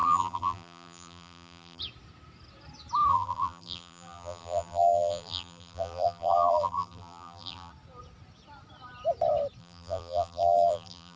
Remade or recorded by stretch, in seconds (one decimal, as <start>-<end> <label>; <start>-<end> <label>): 0.0-1.8 remade; 1.8-3.1 recorded; 3.1-7.7 remade; 7.7-9.6 recorded; 9.6-11.2 remade